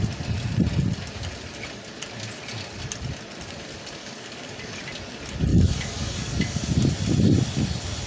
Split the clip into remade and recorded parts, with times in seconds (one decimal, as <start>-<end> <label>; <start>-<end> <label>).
0.0-4.0 recorded; 4.0-4.8 remade; 4.8-5.5 recorded; 5.5-6.7 remade; 6.7-8.1 recorded